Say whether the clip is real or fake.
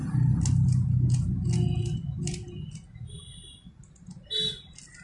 real